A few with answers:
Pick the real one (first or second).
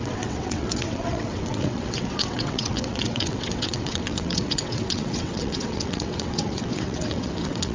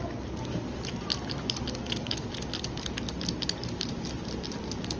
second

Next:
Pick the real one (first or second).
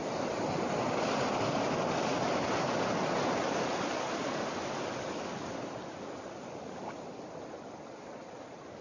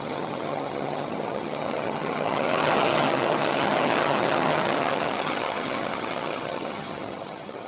first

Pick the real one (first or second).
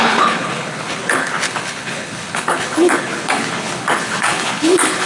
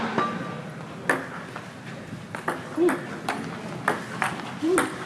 second